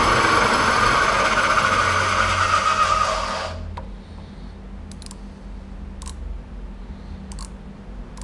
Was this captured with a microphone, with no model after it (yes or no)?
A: yes